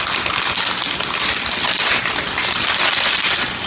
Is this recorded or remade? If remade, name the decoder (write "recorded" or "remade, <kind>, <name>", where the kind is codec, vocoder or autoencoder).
recorded